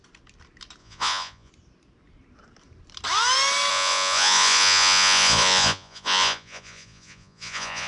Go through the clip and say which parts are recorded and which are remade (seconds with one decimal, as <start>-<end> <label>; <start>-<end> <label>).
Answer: 0.0-0.8 recorded; 0.8-1.5 remade; 1.5-3.7 recorded; 3.7-7.9 remade